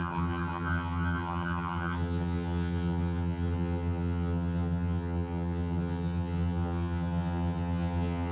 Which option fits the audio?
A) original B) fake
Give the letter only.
B